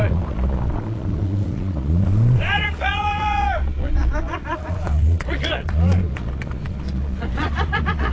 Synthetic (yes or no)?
yes